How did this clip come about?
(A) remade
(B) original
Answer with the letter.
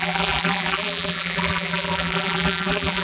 A